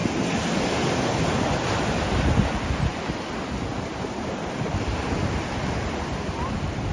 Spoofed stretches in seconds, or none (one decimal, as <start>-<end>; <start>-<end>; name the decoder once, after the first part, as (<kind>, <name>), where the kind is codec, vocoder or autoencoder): none